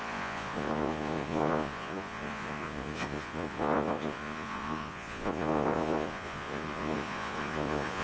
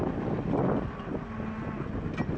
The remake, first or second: first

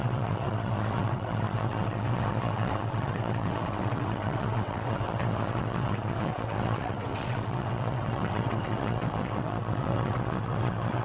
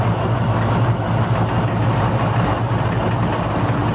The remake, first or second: first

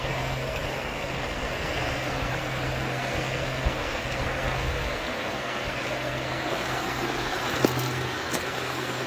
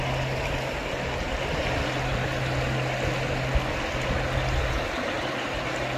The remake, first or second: first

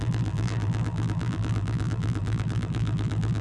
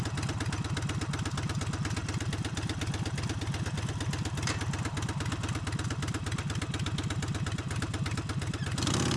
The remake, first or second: first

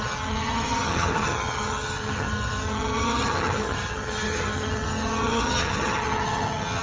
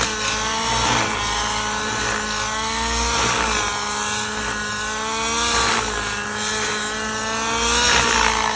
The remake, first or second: first